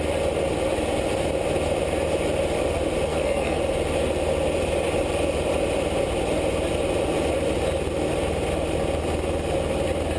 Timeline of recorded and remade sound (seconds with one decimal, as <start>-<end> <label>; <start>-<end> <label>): 0.0-3.1 recorded; 3.1-3.6 remade; 3.6-10.2 recorded